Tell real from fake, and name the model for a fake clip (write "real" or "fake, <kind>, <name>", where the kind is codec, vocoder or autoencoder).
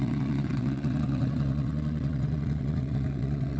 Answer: fake, vocoder, WaveNeXt